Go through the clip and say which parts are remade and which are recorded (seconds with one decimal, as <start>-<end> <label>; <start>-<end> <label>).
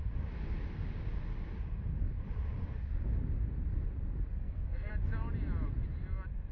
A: 0.0-4.3 recorded; 4.3-4.9 remade; 4.9-6.5 recorded